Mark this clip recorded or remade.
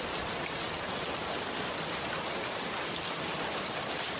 recorded